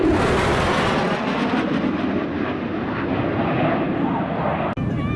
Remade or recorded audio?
recorded